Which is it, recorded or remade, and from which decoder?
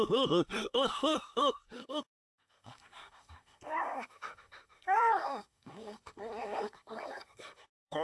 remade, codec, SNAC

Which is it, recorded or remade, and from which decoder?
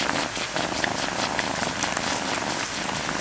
recorded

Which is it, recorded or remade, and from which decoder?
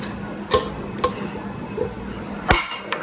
recorded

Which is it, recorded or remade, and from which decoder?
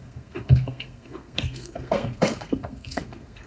remade, codec, SNAC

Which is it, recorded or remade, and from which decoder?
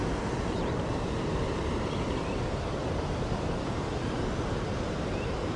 recorded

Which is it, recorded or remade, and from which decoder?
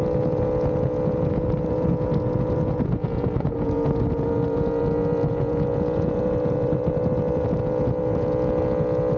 remade, vocoder, Vocos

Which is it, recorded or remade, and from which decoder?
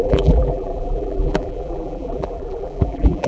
remade, vocoder, BigVGAN v2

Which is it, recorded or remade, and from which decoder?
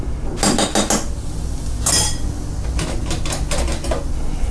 recorded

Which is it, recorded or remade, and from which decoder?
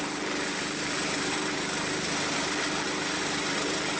recorded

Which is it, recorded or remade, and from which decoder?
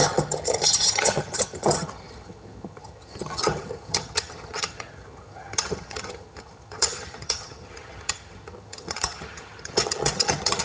remade, vocoder, HiFi-GAN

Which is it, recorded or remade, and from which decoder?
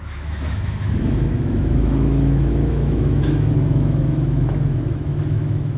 remade, autoencoder, DAC-VAE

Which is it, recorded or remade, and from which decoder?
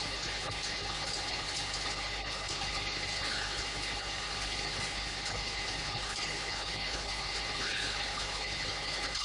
remade, codec, HILCodec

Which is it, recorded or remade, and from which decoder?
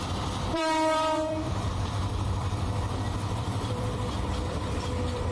remade, vocoder, BigVGAN v2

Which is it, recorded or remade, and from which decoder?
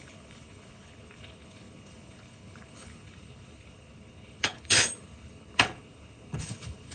remade, codec, HILCodec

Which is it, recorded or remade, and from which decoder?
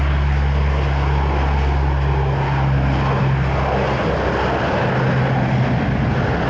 recorded